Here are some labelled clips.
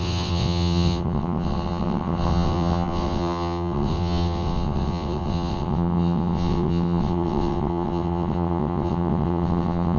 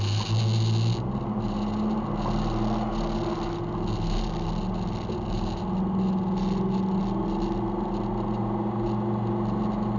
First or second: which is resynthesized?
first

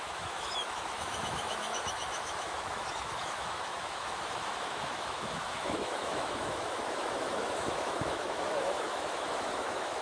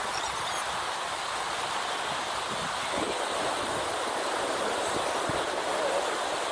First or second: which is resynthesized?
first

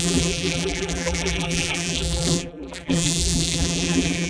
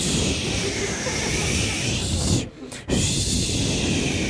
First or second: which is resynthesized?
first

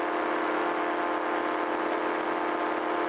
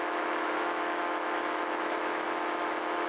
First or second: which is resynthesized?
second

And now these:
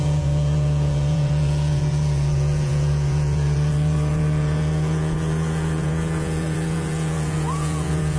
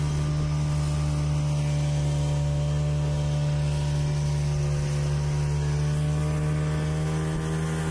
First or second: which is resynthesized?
first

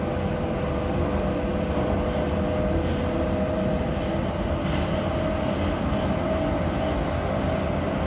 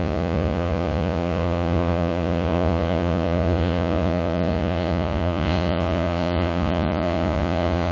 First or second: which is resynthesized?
second